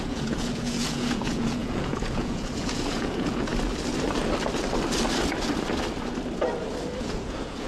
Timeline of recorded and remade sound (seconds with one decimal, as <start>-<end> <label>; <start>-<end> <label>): 0.0-3.5 remade; 3.5-7.0 recorded; 7.0-7.7 remade

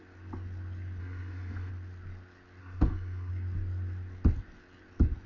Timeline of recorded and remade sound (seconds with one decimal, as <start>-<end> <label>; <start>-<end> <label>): 0.0-1.0 recorded; 1.0-1.7 remade; 1.7-2.6 recorded; 2.6-3.3 remade; 3.3-5.3 recorded

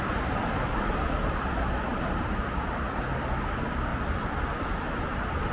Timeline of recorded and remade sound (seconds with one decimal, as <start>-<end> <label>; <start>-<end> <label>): 0.0-3.9 recorded; 3.9-4.8 remade; 4.8-5.5 recorded

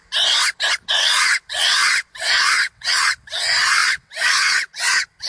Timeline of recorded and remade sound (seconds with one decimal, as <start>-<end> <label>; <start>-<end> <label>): 0.0-0.9 recorded; 0.9-5.3 remade